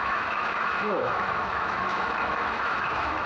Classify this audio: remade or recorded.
remade